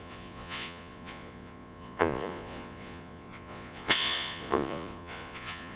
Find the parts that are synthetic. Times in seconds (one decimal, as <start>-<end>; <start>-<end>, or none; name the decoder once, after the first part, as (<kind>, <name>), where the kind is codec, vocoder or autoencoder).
0.0-5.8 (vocoder, Vocos)